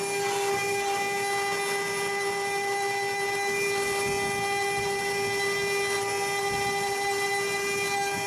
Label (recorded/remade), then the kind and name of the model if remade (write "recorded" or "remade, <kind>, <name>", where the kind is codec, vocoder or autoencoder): recorded